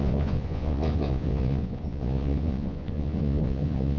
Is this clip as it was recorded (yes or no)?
no